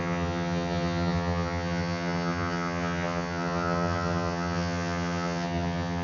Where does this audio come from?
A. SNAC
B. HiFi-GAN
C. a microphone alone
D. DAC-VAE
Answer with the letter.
B